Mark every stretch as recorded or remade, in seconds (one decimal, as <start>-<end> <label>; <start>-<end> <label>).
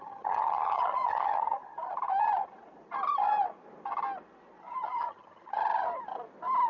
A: 0.0-1.6 remade; 1.6-4.6 recorded; 4.6-5.6 remade; 5.6-6.7 recorded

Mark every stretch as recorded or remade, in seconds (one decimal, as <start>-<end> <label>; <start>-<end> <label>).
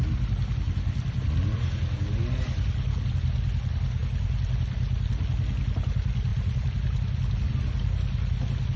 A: 0.0-8.8 recorded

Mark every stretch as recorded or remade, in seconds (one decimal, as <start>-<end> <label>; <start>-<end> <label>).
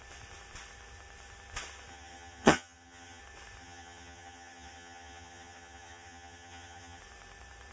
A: 0.0-1.9 recorded; 1.9-3.2 remade; 3.2-3.6 recorded; 3.6-7.0 remade; 7.0-7.7 recorded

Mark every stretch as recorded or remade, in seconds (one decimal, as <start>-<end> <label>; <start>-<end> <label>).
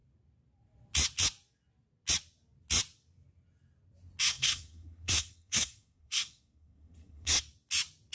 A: 0.0-4.3 recorded; 4.3-7.4 remade; 7.4-8.1 recorded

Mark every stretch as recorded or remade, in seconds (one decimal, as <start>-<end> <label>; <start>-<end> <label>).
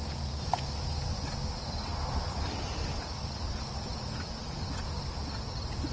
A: 0.0-0.7 remade; 0.7-3.9 recorded; 3.9-5.0 remade; 5.0-5.9 recorded